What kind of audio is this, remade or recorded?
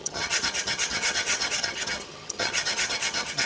remade